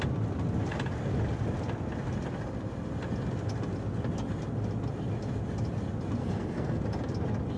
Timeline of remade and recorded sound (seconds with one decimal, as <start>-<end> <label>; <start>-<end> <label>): 0.0-6.2 recorded; 6.2-6.8 remade; 6.8-7.6 recorded